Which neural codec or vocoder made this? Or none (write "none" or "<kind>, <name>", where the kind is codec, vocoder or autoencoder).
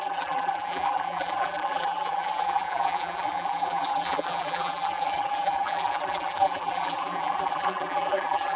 vocoder, BigVGAN v2